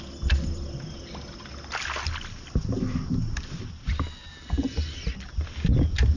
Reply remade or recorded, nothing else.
recorded